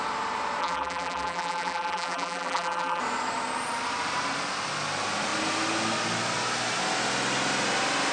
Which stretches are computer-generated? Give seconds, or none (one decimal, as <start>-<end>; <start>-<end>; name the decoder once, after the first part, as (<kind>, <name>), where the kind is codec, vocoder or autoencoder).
0.6-3.0 (vocoder, BigVGAN v2)